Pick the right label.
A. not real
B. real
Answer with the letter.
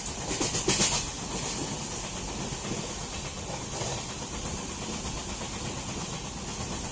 B